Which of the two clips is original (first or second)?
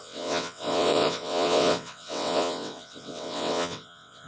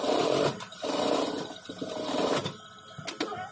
second